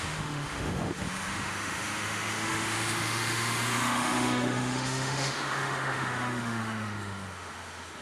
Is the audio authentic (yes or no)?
no